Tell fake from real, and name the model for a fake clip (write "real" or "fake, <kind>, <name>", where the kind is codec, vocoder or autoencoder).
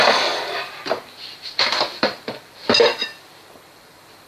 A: fake, vocoder, BigVGAN v2